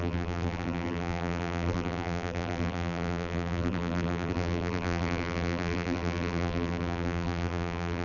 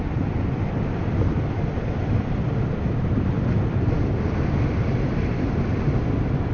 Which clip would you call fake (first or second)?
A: first